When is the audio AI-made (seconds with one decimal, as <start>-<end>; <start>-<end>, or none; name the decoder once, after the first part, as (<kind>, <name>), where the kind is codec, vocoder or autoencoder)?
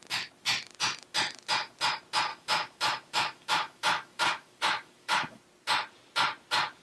2.3-5.4 (autoencoder, DAC-VAE)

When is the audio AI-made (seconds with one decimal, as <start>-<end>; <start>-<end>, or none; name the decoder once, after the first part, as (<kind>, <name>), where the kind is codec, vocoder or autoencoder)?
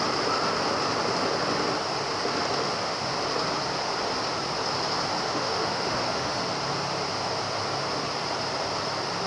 2.6-3.1 (autoencoder, DAC-VAE); 5.2-6.4